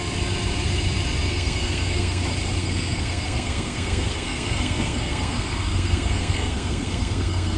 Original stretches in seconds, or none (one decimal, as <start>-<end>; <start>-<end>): 0.0-1.3; 2.2-2.6